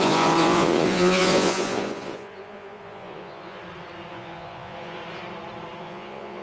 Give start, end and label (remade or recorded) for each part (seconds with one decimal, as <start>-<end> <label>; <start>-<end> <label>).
0.0-3.6 remade; 3.6-4.1 recorded; 4.1-5.0 remade; 5.0-5.8 recorded; 5.8-6.4 remade